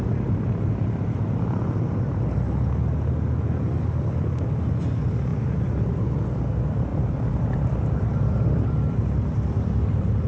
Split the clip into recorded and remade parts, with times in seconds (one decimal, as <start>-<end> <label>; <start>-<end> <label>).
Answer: 0.0-6.9 recorded; 6.9-10.3 remade